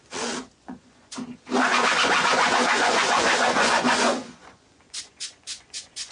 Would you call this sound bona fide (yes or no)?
no